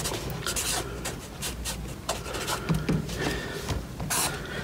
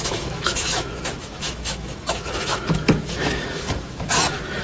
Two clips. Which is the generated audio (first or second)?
second